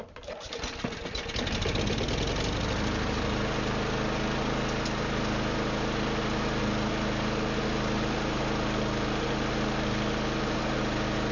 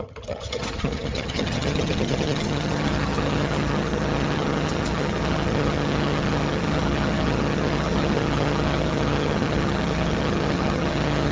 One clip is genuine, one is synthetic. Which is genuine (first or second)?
first